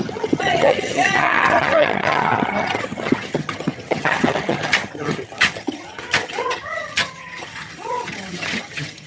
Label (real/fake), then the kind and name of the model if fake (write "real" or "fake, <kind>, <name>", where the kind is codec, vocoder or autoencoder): fake, vocoder, HiFi-GAN